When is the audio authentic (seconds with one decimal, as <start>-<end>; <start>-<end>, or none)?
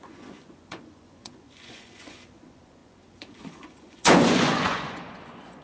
none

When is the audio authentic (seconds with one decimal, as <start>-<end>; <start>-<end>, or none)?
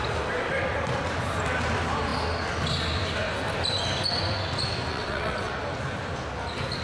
0.0-4.9; 5.5-6.8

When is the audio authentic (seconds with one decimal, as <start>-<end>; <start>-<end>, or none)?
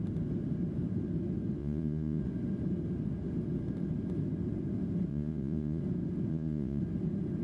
0.0-1.6; 2.2-5.1; 5.8-6.3; 6.8-7.4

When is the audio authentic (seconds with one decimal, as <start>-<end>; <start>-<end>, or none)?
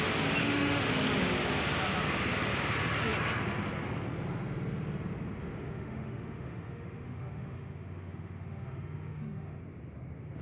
0.0-0.4; 0.9-5.4; 9.6-10.4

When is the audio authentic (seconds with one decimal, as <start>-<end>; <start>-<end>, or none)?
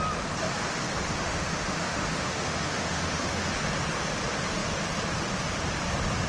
0.0-1.1; 3.5-6.3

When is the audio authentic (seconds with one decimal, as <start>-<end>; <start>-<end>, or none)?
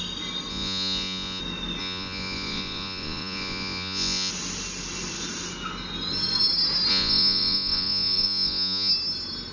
0.0-0.5; 1.4-1.8; 4.3-6.9; 8.9-9.5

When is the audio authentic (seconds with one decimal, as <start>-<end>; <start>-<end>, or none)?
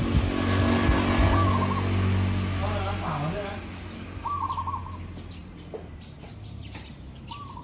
0.0-5.4; 6.9-7.6